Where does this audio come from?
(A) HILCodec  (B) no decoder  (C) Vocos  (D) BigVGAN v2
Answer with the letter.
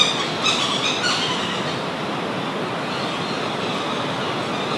B